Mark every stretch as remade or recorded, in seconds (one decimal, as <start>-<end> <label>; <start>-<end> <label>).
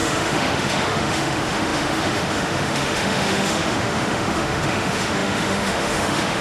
0.0-6.4 remade